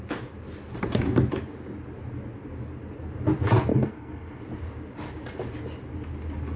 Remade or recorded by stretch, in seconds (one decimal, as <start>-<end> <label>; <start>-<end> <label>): 0.0-3.7 recorded; 3.7-4.4 remade; 4.4-6.6 recorded